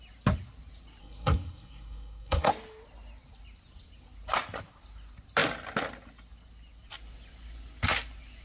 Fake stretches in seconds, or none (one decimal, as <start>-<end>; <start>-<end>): 1.0-2.5